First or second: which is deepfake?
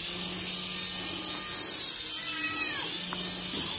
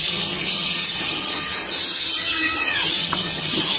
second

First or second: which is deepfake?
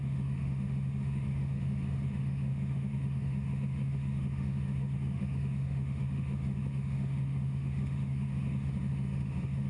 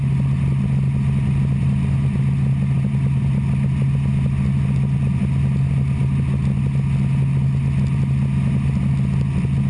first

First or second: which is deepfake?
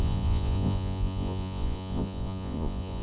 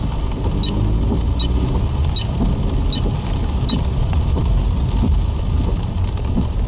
first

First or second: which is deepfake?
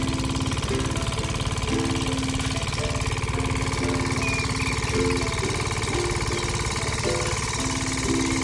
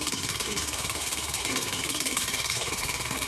second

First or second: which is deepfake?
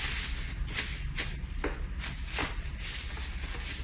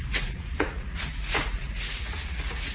second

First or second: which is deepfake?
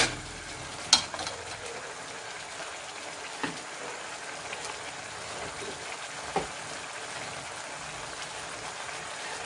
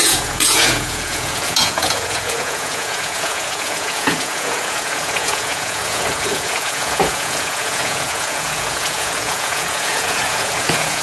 second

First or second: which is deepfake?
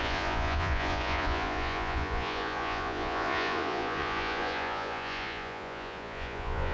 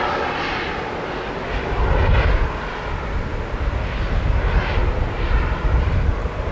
first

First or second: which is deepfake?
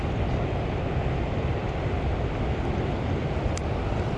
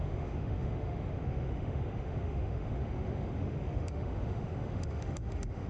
second